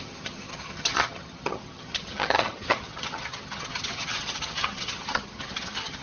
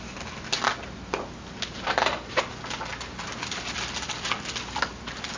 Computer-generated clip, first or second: first